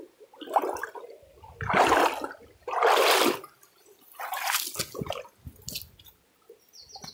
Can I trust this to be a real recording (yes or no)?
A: yes